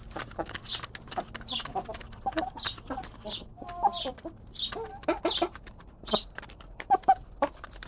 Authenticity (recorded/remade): recorded